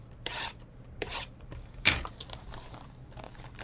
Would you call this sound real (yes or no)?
no